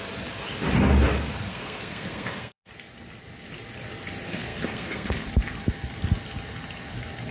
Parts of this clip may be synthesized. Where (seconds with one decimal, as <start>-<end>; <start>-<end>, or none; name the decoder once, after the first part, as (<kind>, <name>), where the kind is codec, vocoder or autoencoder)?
1.5-2.7 (codec, SNAC); 4.3-5.3